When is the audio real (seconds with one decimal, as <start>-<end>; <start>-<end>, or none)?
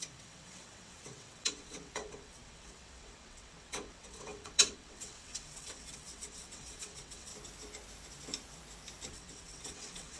7.3-9.1